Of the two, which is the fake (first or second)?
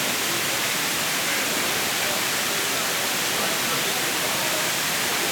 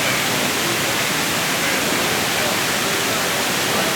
first